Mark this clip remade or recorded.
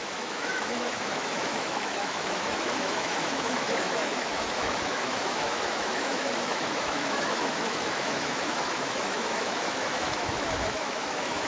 remade